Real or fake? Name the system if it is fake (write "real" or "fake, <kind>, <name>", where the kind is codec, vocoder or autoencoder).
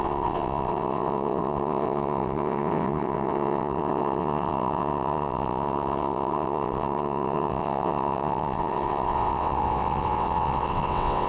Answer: fake, vocoder, WaveNeXt